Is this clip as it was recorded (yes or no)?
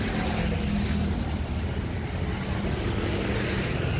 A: yes